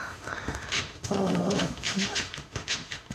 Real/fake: fake